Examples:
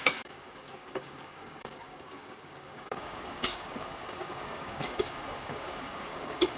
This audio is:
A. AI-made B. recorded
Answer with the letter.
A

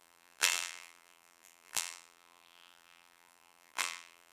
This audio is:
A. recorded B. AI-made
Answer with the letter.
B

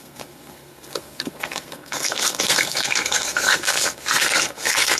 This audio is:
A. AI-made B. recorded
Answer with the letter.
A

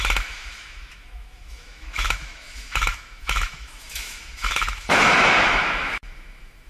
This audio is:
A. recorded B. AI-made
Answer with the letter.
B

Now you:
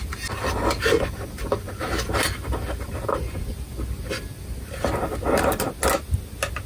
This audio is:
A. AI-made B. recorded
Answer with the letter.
B